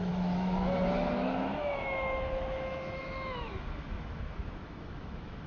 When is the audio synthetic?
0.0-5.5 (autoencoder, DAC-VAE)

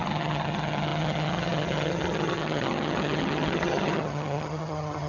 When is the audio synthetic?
0.0-5.1 (vocoder, HiFi-GAN)

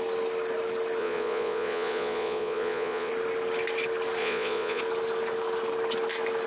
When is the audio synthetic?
1.0-3.1 (vocoder, Vocos); 4.2-4.8

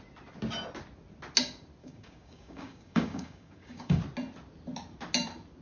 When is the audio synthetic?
1.8-4.0 (codec, DAC)

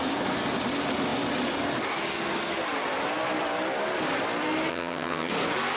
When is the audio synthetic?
4.7-5.3 (vocoder, HiFi-GAN)

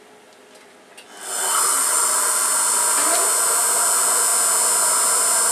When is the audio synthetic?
1.9-2.5 (vocoder, BigVGAN v2)